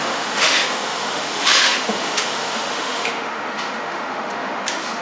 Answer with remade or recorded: remade